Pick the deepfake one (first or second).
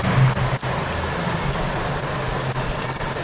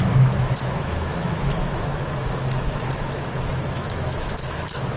second